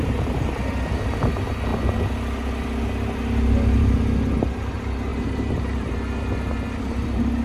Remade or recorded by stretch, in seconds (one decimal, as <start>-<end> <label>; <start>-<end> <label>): 0.0-5.1 recorded; 5.1-5.9 remade; 5.9-7.4 recorded